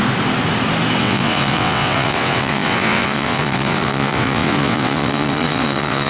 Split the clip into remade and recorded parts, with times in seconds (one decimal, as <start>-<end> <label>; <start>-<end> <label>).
0.0-1.0 recorded; 1.0-6.1 remade